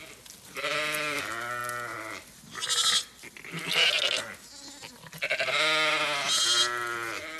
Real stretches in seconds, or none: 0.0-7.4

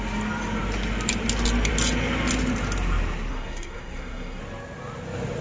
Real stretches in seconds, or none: 0.0-3.3; 4.4-5.4